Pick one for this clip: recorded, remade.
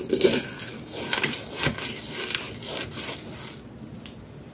recorded